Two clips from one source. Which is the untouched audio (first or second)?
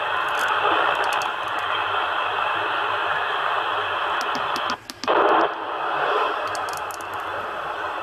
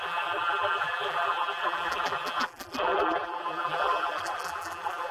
first